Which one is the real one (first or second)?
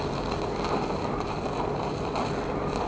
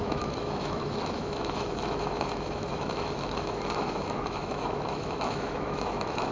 first